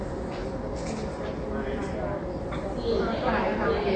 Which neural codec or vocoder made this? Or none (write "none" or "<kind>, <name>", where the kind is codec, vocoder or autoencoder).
none